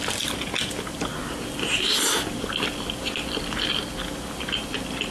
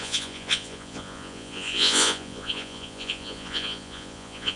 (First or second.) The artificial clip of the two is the second